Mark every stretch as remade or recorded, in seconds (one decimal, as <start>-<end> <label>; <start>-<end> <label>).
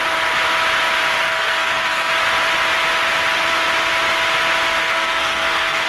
0.0-1.2 recorded; 1.2-2.1 remade; 2.1-4.8 recorded; 4.8-5.9 remade